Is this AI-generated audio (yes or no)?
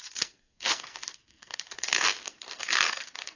yes